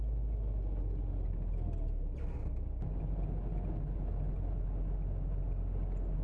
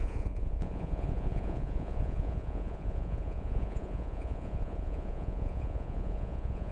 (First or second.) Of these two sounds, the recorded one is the first